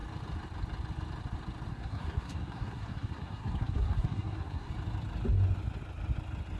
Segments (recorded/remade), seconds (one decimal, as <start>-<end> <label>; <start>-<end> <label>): 0.0-1.7 recorded; 1.7-4.7 remade; 4.7-6.6 recorded